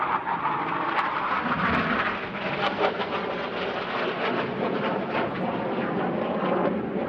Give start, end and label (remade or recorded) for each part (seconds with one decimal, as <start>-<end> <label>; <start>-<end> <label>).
0.0-2.6 recorded; 2.6-3.1 remade; 3.1-7.1 recorded

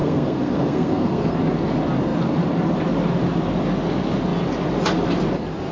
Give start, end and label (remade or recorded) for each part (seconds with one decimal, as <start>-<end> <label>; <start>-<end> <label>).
0.0-1.3 remade; 1.3-5.7 recorded

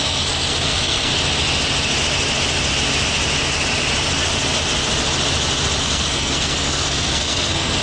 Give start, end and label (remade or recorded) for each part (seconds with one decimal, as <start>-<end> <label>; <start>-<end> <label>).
0.0-1.1 remade; 1.1-5.8 recorded; 5.8-7.8 remade

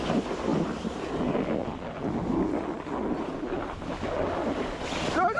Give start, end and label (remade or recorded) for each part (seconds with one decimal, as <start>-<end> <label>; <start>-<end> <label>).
0.0-5.4 recorded

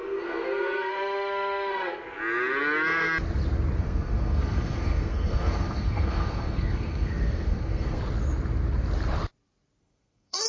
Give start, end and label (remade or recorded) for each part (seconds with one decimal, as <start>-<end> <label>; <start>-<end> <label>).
0.0-2.0 remade; 2.0-3.8 recorded; 3.8-8.0 remade; 8.0-9.8 recorded; 9.8-10.5 remade

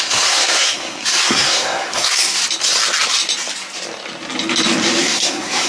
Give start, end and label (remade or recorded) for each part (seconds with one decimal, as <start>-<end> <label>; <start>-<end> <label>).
0.0-2.4 remade; 2.4-5.0 recorded; 5.0-5.7 remade

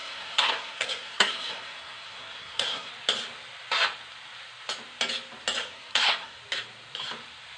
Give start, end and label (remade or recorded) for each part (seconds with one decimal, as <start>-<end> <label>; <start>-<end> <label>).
0.0-2.9 remade; 2.9-5.6 recorded; 5.6-6.4 remade; 6.4-7.6 recorded